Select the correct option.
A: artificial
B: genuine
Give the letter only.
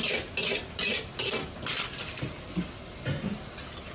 B